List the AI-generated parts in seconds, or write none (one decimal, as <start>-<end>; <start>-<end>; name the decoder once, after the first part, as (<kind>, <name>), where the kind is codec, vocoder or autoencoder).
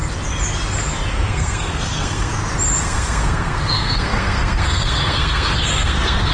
1.1-2.3 (codec, SNAC); 2.8-6.3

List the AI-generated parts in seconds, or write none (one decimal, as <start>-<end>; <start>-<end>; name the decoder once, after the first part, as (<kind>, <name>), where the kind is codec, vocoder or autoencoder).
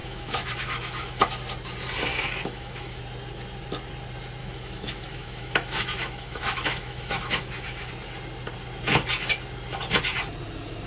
0.0-1.3 (autoencoder, DAC-VAE); 2.1-3.0; 4.4-7.9